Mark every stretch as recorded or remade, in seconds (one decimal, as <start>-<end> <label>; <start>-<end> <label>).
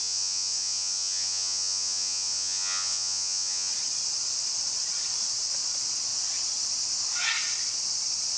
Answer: 0.0-3.7 remade; 3.7-8.4 recorded